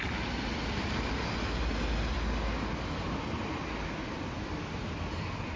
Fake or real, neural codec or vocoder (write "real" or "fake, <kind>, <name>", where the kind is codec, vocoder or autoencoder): real